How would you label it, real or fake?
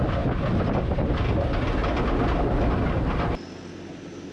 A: real